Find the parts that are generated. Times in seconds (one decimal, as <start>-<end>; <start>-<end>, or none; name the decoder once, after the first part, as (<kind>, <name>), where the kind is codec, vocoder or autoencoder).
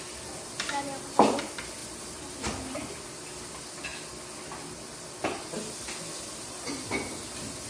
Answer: none